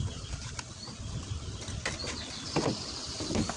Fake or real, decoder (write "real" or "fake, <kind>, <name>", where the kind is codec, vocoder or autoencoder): real